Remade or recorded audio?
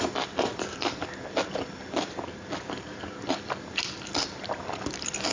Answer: recorded